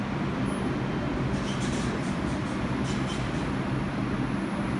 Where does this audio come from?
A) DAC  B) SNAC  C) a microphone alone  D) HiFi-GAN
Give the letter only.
C